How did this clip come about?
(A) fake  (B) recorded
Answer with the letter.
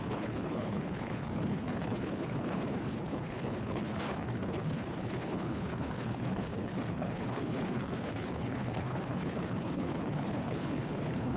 A